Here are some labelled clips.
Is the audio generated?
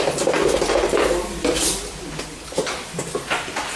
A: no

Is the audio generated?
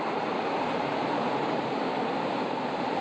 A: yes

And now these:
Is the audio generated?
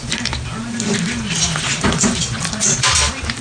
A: no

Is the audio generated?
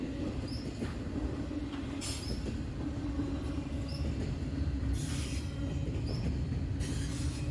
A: no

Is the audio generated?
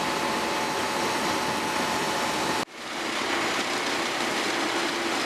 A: no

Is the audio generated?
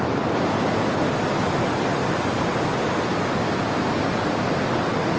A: no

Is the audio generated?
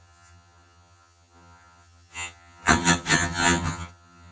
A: yes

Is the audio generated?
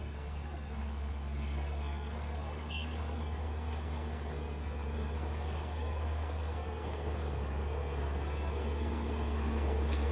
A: yes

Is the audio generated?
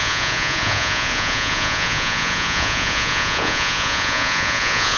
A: yes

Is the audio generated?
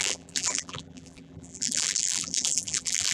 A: yes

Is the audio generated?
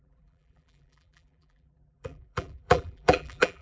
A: yes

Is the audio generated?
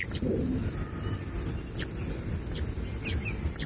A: no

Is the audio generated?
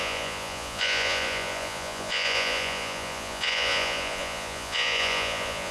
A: yes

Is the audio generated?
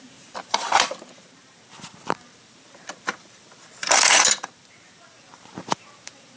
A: yes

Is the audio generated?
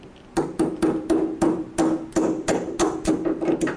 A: no